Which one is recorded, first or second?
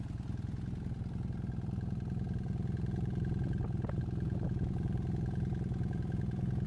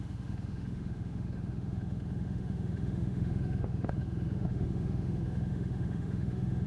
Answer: first